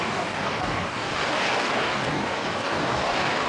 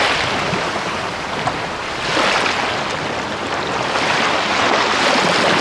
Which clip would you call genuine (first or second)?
second